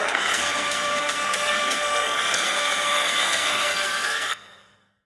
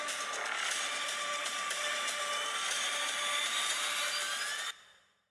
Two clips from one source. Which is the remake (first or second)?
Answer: first